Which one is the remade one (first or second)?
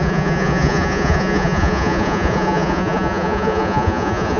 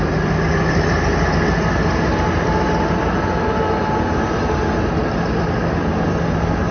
first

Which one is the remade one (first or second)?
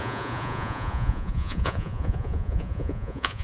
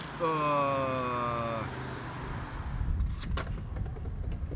first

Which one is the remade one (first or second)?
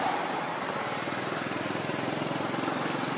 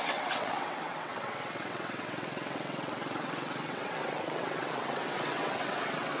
second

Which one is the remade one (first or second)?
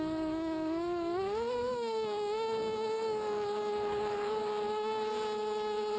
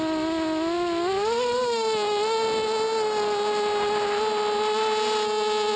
first